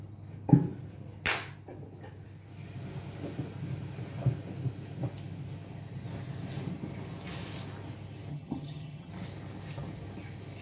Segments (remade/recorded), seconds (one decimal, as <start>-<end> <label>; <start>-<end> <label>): 0.0-8.3 recorded; 8.3-9.1 remade; 9.1-10.6 recorded